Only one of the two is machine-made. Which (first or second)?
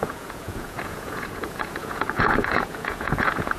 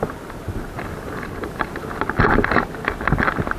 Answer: first